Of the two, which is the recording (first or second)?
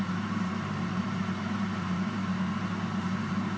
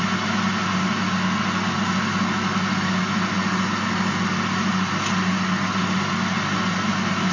second